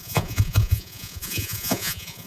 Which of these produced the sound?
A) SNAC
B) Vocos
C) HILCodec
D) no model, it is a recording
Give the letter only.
B